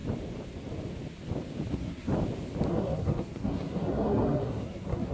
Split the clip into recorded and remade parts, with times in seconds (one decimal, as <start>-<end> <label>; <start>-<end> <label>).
0.0-1.7 recorded; 1.7-2.1 remade; 2.1-2.7 recorded; 2.7-5.1 remade